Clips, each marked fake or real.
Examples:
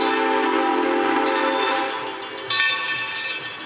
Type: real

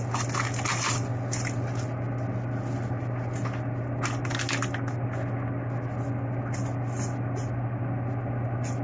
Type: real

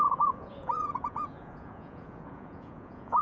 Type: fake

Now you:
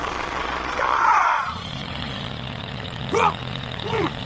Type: fake